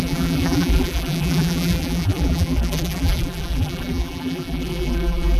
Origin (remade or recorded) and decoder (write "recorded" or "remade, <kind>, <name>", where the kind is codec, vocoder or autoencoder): remade, vocoder, BigVGAN v2